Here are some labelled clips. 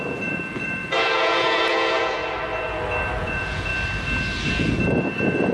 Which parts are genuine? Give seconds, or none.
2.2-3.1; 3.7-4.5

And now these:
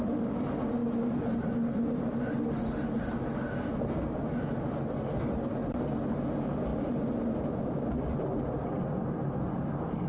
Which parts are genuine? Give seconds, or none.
0.0-10.1

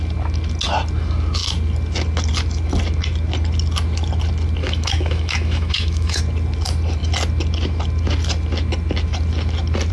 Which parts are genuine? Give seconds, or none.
0.0-4.6; 6.2-9.9

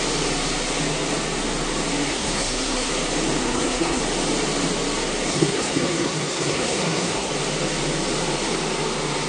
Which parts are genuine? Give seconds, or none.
0.0-2.1; 2.9-3.4; 4.0-5.3; 7.3-9.3